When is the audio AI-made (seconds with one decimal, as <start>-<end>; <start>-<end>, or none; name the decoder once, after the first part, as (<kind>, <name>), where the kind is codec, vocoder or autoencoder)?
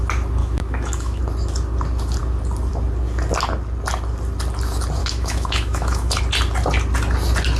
0.4-1.2 (autoencoder, DAC-VAE); 5.0-6.2